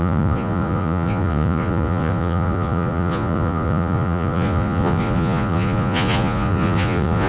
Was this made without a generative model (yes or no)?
no